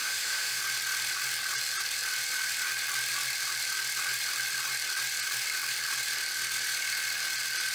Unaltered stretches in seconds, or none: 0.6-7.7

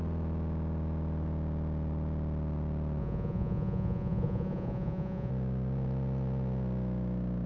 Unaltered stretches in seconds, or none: 0.0-3.0; 5.3-7.5

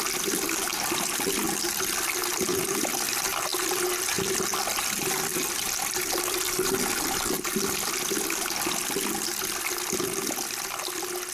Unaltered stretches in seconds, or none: 0.0-11.3

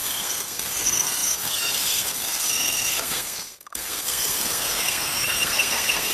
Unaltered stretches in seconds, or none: none

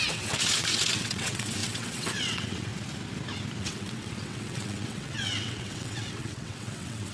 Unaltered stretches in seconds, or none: 2.7-3.6

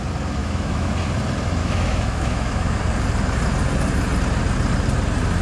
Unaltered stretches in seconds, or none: 0.0-0.4; 0.9-1.6; 2.8-5.4

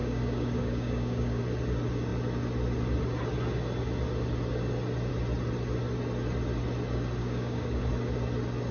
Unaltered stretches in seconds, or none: 1.4-7.2; 7.9-8.7